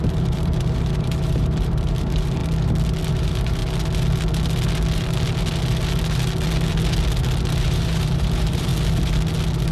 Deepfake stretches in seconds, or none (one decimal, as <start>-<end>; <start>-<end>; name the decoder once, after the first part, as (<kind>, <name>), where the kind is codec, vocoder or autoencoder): 0.0-2.4 (vocoder, BigVGAN v2); 3.1-3.6; 7.6-8.7